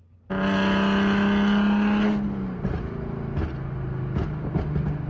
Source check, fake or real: real